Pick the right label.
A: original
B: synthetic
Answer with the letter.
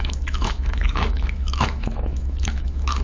B